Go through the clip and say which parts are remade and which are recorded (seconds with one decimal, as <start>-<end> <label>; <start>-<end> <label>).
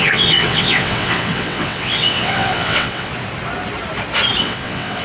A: 0.0-3.1 remade; 3.1-4.4 recorded; 4.4-5.0 remade